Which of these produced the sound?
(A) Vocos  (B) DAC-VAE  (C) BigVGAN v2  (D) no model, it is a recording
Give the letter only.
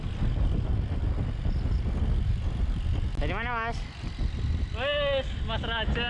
D